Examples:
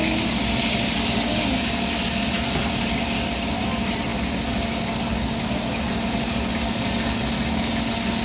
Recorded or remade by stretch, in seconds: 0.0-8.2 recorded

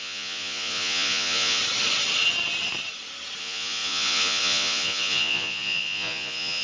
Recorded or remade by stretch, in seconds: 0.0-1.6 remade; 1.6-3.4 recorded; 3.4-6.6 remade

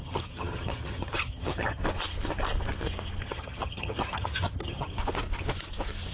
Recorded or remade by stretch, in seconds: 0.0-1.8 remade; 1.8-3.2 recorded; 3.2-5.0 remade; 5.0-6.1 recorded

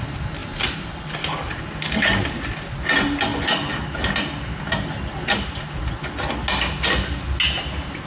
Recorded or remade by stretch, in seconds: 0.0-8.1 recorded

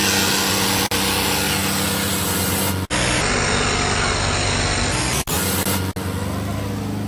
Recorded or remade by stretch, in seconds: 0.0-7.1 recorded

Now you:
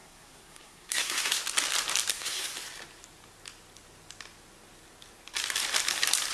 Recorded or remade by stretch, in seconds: 0.0-1.4 remade; 1.4-2.1 recorded; 2.1-2.5 remade; 2.5-6.3 recorded

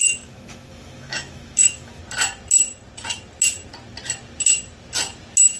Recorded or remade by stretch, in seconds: 0.0-2.0 remade; 2.0-5.6 recorded

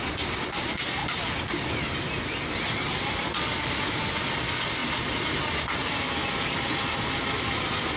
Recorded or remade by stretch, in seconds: 0.0-1.0 recorded; 1.0-3.7 remade; 3.7-8.0 recorded